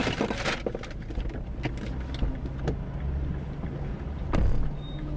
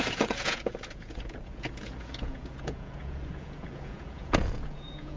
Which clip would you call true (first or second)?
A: first